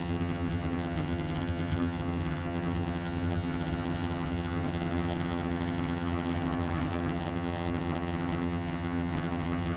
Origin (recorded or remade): remade